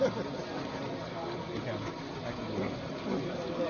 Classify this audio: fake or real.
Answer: real